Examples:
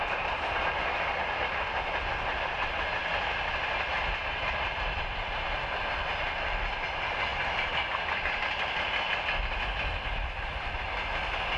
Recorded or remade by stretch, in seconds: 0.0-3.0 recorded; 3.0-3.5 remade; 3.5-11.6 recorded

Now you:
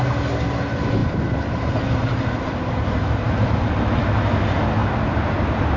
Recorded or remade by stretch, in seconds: 0.0-1.0 recorded; 1.0-3.7 remade; 3.7-4.8 recorded; 4.8-5.3 remade; 5.3-5.8 recorded

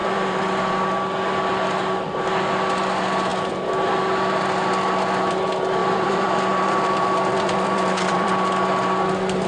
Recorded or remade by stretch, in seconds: 0.0-0.7 remade; 0.7-5.8 recorded; 5.8-8.3 remade; 8.3-9.5 recorded

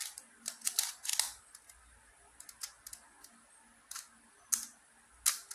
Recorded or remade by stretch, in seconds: 0.0-5.5 recorded